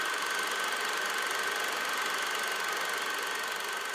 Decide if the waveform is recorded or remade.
recorded